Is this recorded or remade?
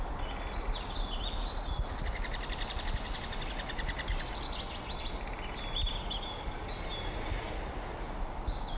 recorded